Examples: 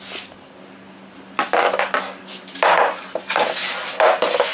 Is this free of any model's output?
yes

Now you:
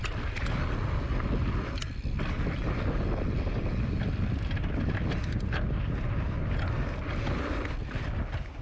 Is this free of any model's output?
yes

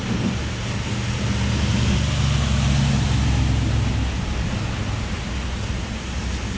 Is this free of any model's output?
yes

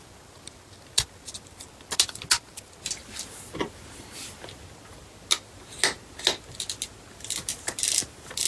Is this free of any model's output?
yes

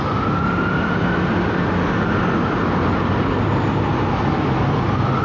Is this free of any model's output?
yes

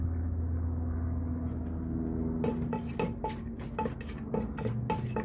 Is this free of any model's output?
yes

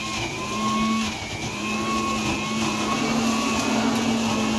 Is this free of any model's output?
yes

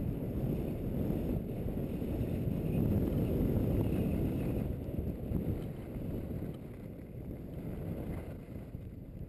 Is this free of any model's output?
yes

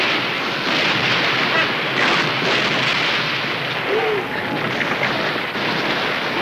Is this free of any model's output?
yes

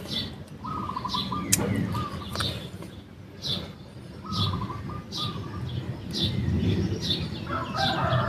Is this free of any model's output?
yes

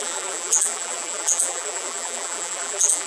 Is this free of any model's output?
no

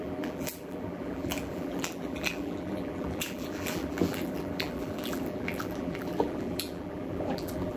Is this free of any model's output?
no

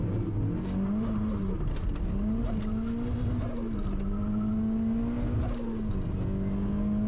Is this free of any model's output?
yes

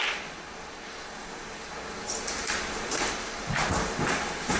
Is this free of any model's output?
yes